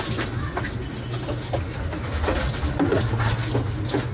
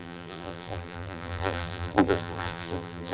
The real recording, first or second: first